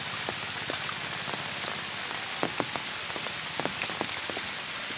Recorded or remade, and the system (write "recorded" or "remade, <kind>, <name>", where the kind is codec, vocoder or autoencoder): recorded